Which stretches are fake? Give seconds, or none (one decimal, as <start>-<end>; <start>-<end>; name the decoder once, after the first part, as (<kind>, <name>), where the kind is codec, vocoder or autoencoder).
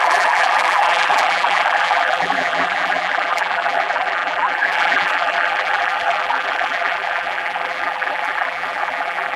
0.0-9.4 (vocoder, BigVGAN v2)